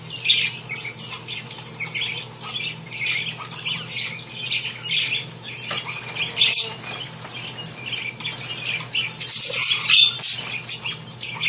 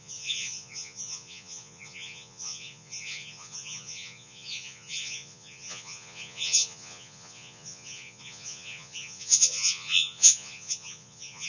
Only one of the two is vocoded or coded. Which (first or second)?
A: second